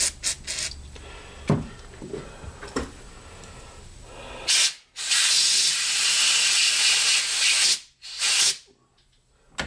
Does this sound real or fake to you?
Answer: real